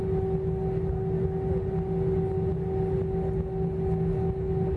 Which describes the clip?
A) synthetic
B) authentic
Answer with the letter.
B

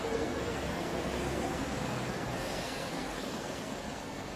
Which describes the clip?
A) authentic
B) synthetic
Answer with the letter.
B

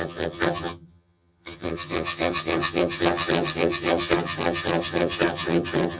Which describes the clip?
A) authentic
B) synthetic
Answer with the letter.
B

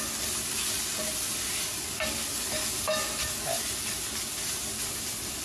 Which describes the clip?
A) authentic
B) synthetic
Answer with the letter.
A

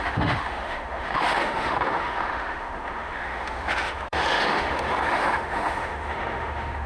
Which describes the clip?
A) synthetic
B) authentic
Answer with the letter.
A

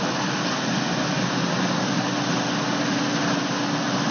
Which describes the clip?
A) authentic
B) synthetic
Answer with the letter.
A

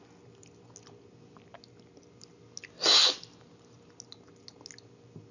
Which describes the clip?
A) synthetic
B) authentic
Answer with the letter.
B